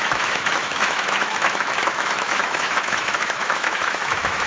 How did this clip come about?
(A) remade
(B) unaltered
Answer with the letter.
A